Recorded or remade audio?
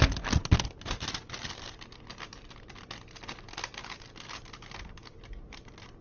recorded